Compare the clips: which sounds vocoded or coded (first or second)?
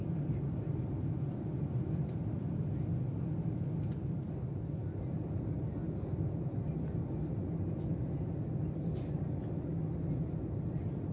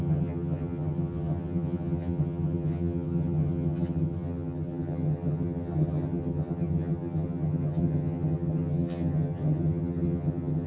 second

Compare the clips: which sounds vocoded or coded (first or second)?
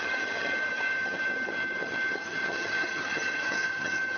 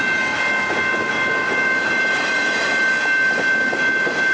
first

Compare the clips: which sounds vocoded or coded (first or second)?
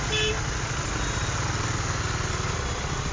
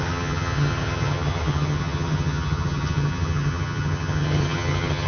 second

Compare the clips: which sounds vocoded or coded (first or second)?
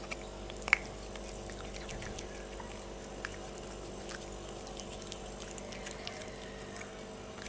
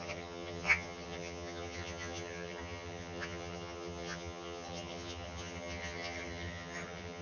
second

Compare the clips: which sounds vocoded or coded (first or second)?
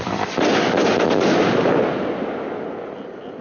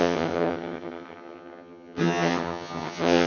second